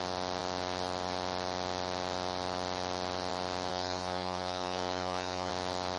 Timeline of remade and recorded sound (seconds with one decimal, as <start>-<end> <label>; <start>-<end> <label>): 0.0-3.7 recorded; 3.7-5.5 remade; 5.5-6.0 recorded